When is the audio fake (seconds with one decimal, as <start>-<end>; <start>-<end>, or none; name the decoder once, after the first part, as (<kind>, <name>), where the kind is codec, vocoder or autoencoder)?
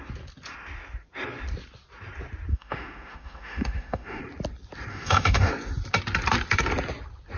2.5-4.2 (autoencoder, DAC-VAE); 4.9-5.5